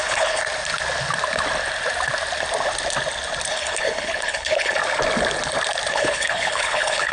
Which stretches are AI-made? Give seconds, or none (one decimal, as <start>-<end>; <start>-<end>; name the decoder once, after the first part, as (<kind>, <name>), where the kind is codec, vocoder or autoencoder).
0.0-0.4 (codec, HILCodec); 3.5-4.8; 5.9-7.1